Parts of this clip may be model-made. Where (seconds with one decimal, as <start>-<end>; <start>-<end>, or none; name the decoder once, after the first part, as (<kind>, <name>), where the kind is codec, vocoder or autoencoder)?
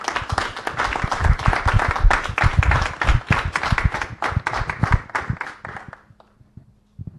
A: none